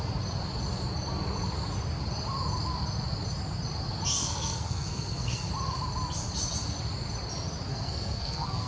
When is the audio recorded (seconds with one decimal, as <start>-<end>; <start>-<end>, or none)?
0.0-4.2; 5.5-7.7